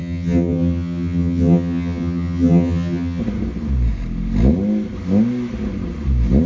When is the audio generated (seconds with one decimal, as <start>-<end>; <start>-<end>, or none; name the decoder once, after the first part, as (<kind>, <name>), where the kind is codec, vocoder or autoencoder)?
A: 0.0-3.2 (vocoder, HiFi-GAN)

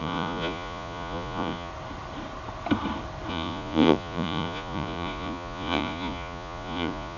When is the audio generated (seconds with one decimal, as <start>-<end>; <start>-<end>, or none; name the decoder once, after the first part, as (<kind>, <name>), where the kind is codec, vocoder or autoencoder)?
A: 0.0-1.7 (vocoder, Vocos); 3.3-7.2

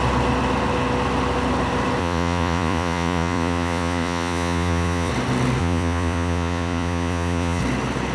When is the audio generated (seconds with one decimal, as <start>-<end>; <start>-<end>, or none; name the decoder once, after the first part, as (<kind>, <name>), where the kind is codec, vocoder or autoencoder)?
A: 2.0-5.1 (vocoder, Vocos); 5.6-7.6